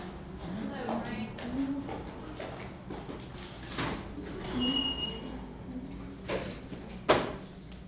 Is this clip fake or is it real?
real